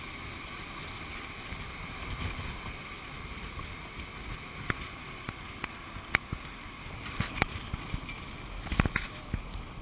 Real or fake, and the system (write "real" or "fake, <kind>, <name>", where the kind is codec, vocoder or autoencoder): real